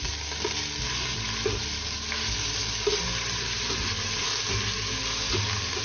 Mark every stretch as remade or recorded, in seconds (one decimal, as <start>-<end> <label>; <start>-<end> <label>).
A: 0.0-5.8 recorded